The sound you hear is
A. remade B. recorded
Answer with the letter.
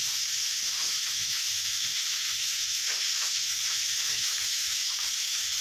A